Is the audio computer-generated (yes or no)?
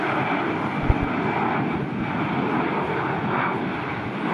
no